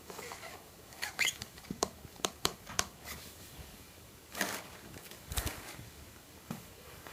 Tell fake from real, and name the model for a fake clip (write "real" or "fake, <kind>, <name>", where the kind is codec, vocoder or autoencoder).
fake, codec, DAC